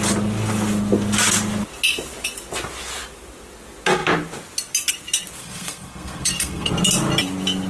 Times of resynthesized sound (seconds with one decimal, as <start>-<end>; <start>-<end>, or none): 5.4-6.7